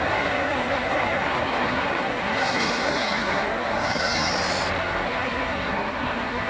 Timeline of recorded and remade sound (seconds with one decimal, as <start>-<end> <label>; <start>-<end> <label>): 0.0-4.3 remade; 4.3-4.8 recorded; 4.8-6.5 remade